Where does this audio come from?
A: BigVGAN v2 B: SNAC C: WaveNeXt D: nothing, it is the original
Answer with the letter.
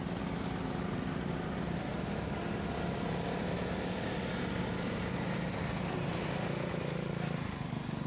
D